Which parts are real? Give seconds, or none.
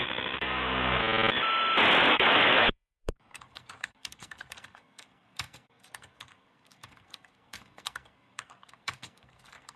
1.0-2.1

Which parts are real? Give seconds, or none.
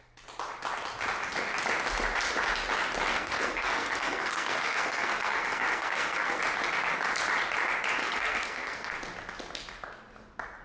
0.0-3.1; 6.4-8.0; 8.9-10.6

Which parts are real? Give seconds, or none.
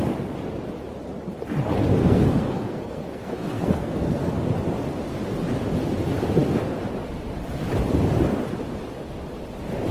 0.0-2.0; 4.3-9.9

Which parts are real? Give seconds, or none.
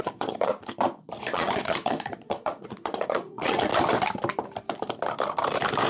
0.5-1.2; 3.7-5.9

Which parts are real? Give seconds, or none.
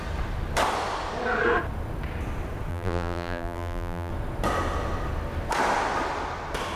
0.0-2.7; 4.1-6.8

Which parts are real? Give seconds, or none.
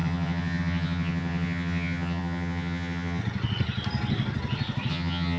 3.2-4.9